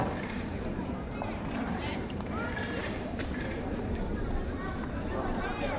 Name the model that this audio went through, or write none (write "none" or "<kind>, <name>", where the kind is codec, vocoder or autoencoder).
vocoder, BigVGAN v2